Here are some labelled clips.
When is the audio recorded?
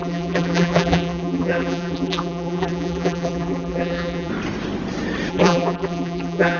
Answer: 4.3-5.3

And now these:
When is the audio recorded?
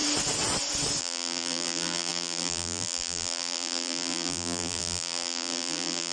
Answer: 0.0-1.0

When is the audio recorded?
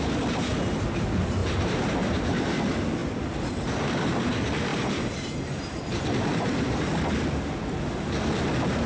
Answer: 0.0-1.4; 2.6-4.7; 6.9-8.9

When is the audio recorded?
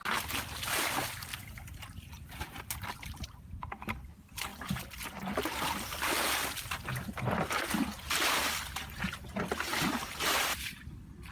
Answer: 0.0-1.3; 4.1-4.5; 5.0-9.7